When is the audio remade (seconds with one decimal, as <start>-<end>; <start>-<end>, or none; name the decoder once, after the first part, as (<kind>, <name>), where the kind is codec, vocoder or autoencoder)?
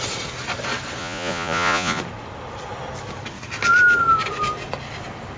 1.0-2.0 (vocoder, Vocos)